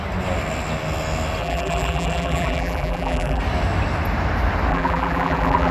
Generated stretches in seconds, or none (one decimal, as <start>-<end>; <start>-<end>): 1.4-3.4; 4.7-5.7